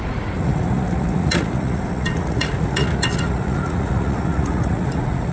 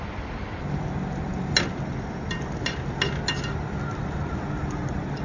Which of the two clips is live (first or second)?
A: second